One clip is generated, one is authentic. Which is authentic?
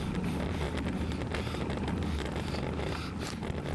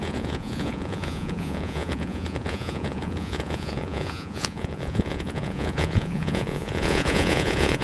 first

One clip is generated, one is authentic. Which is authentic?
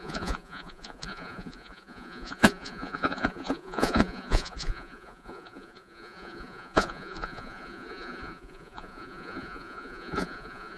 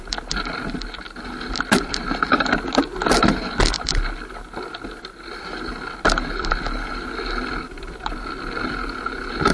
second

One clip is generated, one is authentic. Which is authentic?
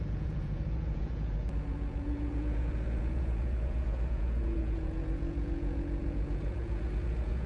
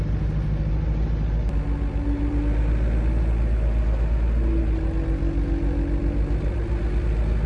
second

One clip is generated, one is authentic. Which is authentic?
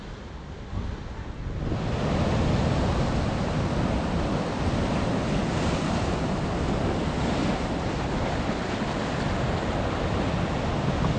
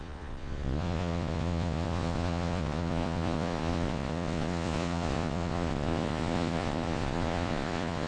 first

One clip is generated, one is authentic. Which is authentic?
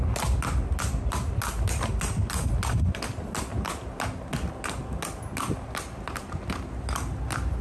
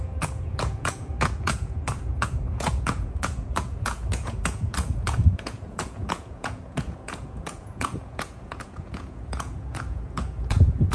first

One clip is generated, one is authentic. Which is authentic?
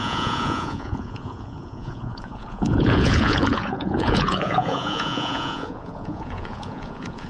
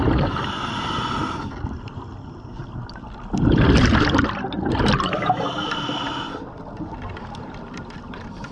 second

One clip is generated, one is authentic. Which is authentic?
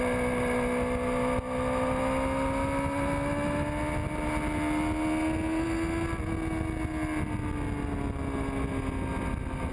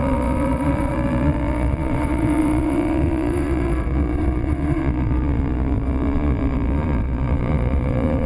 first